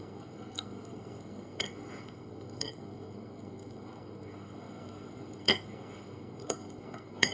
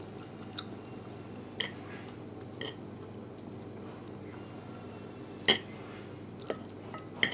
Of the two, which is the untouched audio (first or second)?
second